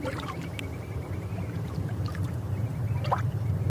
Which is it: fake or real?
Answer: fake